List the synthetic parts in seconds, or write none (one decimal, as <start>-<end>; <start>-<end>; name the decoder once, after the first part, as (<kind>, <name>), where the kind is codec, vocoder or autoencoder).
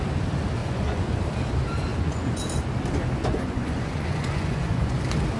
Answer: 0.6-1.2 (vocoder, Vocos); 1.9-2.4; 3.2-5.0